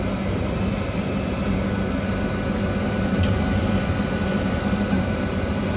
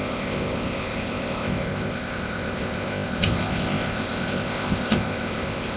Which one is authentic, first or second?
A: first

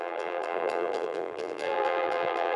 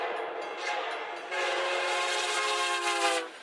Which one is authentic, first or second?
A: second